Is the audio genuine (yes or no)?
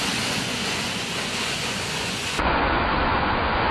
no